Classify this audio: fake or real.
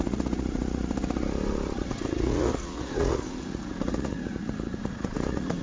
fake